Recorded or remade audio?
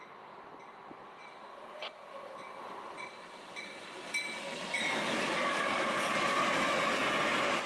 recorded